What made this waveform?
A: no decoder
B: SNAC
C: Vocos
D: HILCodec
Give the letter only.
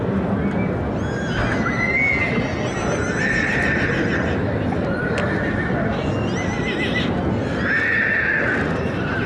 A